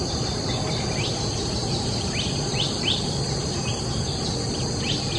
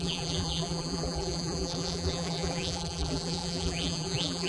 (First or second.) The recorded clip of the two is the first